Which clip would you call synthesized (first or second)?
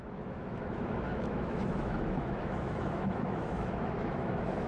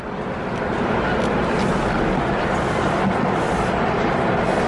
first